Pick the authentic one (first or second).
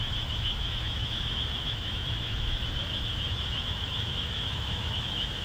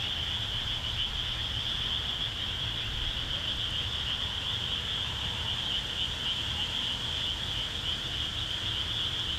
second